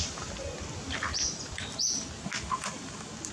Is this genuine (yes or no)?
yes